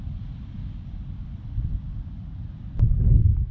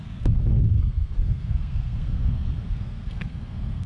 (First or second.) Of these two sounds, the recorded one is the first